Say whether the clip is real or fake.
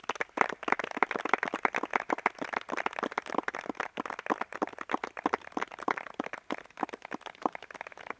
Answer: real